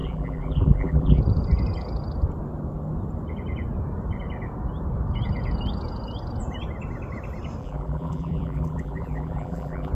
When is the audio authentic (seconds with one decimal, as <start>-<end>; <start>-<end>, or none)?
1.2-7.6